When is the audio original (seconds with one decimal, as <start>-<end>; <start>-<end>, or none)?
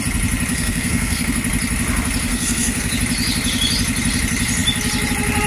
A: 0.0-0.5; 1.3-2.3; 2.9-5.5